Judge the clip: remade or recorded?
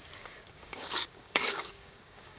remade